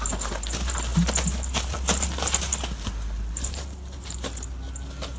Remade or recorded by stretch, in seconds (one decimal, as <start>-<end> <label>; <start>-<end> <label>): 0.0-5.2 recorded